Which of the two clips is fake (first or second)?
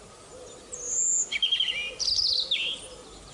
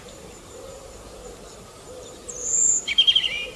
second